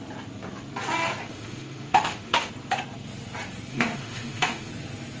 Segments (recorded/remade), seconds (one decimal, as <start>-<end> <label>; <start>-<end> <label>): 0.0-1.2 recorded; 1.2-2.5 remade; 2.5-3.7 recorded; 3.7-4.7 remade; 4.7-5.2 recorded